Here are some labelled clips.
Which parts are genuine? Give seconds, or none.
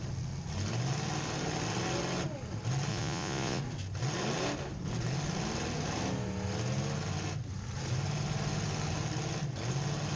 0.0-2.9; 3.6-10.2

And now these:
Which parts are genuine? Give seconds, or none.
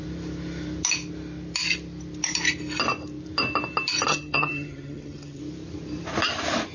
0.0-4.1; 5.4-6.7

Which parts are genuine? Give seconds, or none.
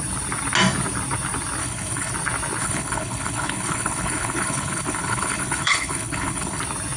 0.0-1.6; 2.1-2.6; 6.6-7.0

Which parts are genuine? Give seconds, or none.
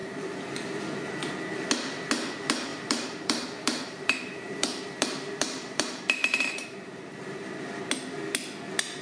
0.8-2.7; 7.5-9.0